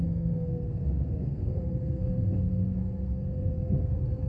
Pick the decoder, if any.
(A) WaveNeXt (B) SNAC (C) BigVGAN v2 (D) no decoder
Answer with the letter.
B